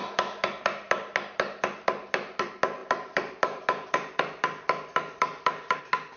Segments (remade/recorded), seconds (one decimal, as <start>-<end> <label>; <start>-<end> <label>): 0.0-6.2 recorded